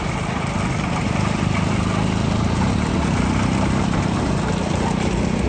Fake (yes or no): no